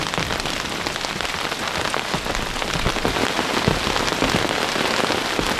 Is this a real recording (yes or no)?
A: yes